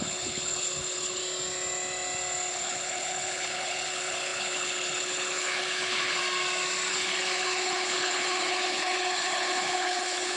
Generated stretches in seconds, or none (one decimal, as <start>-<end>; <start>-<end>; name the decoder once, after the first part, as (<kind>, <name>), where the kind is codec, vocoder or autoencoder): 0.0-1.2 (codec, HILCodec); 2.5-6.2; 6.9-10.4